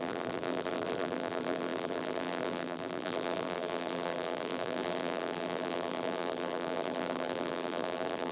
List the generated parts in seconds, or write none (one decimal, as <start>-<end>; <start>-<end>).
0.0-8.3

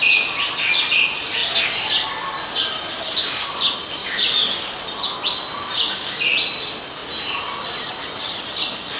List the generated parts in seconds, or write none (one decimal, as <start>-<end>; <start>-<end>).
none

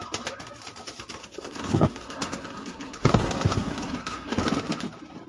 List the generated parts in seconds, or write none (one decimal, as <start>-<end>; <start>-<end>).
1.2-4.4

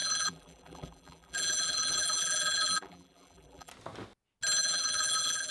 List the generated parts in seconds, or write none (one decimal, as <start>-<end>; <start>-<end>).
0.0-3.7; 4.6-5.5

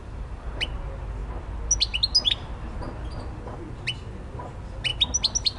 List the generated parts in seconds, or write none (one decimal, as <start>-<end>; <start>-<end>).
0.0-0.7

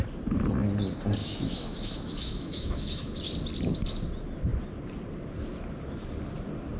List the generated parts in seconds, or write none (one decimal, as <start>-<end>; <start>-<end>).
1.2-3.2

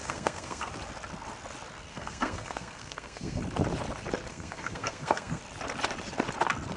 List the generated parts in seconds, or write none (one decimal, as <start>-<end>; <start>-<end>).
0.0-0.7; 1.9-3.4; 4.3-5.4

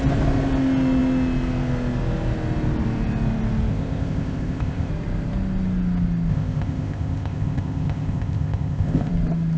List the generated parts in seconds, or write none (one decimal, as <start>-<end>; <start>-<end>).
3.7-4.9; 6.3-9.1